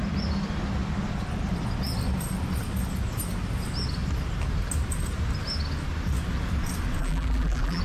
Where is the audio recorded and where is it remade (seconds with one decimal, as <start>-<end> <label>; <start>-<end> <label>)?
0.0-7.0 recorded; 7.0-7.8 remade